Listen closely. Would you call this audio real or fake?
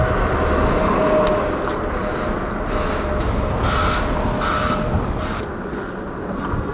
real